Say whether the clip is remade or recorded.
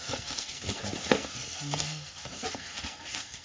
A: remade